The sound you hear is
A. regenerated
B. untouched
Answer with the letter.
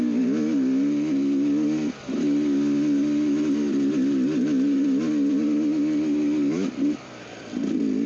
B